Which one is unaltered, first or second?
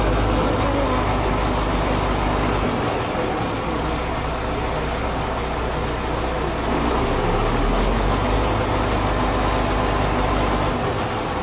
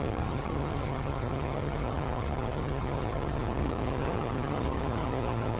first